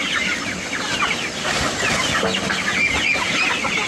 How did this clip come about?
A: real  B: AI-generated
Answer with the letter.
A